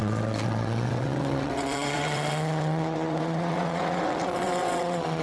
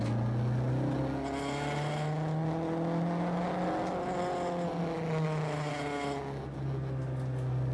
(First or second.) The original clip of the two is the second